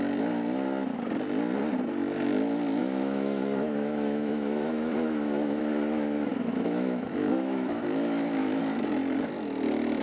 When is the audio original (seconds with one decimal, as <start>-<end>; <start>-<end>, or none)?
0.0-2.8; 5.6-6.3; 8.6-10.0